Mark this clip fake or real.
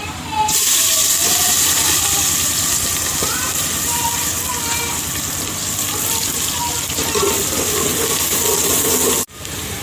real